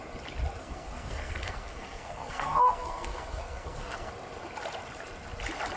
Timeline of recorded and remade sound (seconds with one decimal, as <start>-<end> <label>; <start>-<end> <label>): 0.0-0.6 recorded; 0.6-4.1 remade; 4.1-5.8 recorded